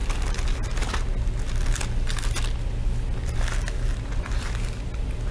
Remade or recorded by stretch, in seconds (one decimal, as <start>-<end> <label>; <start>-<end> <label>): 0.0-5.3 recorded